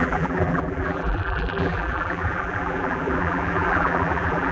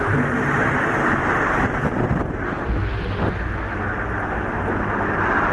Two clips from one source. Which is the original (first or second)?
second